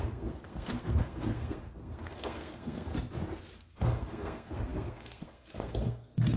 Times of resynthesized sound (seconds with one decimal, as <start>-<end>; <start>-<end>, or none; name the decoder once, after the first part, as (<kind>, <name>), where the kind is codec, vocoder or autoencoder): 0.0-2.9 (codec, SNAC); 3.5-6.4